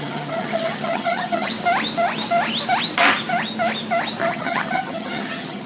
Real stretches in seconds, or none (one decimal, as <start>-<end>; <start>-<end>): 1.5-4.3

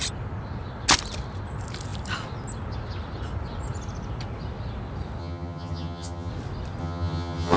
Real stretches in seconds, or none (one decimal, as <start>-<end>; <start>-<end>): 0.0-5.2; 6.3-6.8

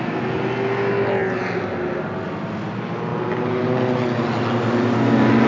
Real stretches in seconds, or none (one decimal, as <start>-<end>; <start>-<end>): 0.0-5.5

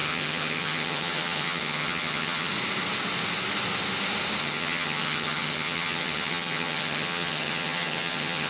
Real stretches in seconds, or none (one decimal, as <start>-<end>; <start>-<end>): 2.5-4.4

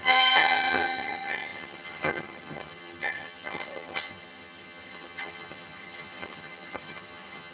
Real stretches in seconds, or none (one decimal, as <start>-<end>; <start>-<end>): none